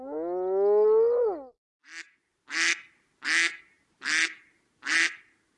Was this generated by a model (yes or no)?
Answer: no